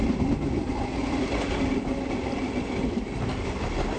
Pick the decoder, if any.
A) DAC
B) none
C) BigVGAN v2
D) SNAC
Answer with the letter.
B